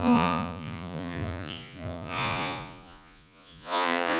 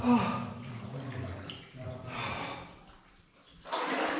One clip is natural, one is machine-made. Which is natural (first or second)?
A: second